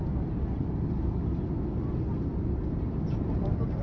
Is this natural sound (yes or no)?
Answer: yes